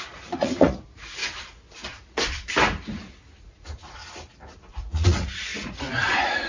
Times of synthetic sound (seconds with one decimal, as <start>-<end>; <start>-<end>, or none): 0.0-1.2; 3.4-4.0; 4.7-6.5